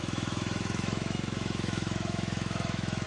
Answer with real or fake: fake